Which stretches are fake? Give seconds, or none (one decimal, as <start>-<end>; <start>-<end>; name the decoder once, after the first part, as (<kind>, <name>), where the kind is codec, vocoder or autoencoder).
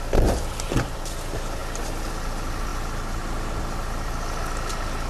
none